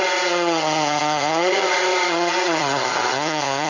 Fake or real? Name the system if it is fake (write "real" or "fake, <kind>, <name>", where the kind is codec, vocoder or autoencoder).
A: fake, vocoder, HiFi-GAN